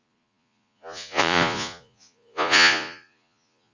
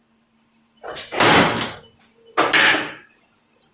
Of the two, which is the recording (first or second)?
second